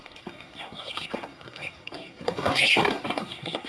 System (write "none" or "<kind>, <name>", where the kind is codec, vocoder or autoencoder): codec, SNAC